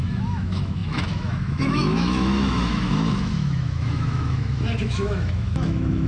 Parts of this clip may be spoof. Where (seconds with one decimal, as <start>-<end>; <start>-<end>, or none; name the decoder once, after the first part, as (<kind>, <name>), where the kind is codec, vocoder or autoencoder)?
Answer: 0.0-6.1 (autoencoder, DAC-VAE)

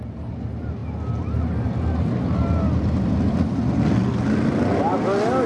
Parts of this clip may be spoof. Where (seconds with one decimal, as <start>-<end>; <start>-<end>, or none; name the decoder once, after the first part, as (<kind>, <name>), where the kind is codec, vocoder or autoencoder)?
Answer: none

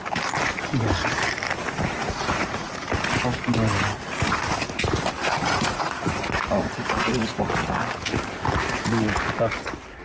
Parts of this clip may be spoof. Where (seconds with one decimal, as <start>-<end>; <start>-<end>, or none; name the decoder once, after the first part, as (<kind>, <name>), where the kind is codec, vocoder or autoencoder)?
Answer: 2.0-2.7 (vocoder, Vocos); 5.2-6.4

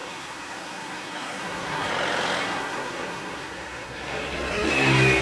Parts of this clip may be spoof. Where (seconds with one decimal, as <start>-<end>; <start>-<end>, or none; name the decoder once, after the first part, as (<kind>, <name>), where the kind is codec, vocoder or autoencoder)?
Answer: 0.0-1.9 (codec, SNAC); 2.4-4.7

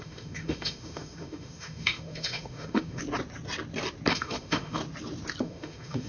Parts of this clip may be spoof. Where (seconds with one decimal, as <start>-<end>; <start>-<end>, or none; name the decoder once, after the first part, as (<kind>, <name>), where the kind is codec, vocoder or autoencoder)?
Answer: 0.0-3.0 (autoencoder, DAC-VAE); 4.1-4.8; 5.4-6.1

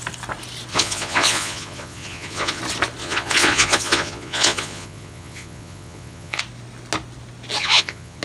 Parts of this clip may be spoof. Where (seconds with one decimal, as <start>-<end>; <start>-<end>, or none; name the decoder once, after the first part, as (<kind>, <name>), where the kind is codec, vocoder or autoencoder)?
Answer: 0.7-2.6 (vocoder, Vocos); 3.0-6.4; 7.6-8.2